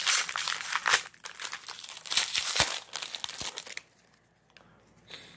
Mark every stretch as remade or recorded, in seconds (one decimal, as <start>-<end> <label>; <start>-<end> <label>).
0.0-5.4 recorded